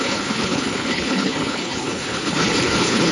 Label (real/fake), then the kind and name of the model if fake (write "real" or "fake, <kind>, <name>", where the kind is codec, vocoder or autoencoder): fake, codec, HILCodec